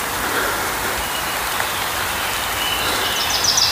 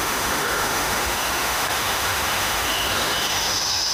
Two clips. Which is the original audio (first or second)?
first